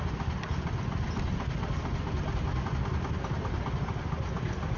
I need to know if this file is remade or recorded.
recorded